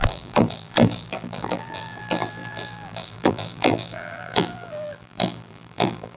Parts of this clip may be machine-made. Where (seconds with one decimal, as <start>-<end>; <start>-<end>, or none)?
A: 0.0-6.2